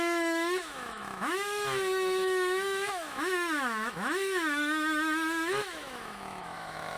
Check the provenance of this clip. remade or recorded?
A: remade